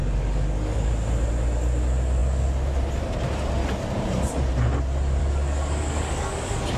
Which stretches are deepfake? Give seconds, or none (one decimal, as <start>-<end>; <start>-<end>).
0.0-0.9; 5.2-6.8